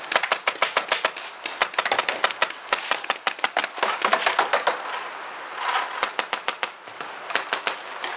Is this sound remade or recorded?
recorded